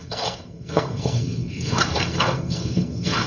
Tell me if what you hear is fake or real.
fake